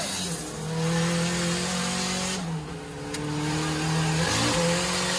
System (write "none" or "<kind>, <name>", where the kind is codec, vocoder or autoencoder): none